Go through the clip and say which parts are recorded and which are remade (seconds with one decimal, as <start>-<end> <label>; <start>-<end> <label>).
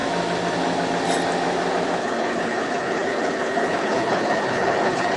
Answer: 0.0-2.0 recorded; 2.0-5.2 remade